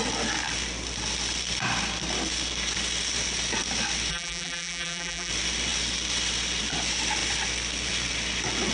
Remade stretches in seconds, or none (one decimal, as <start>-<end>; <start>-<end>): 4.1-5.3